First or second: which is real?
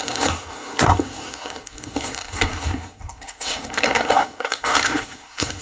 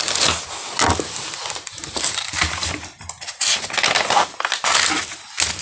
second